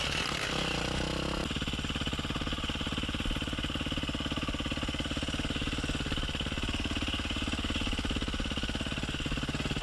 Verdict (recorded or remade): recorded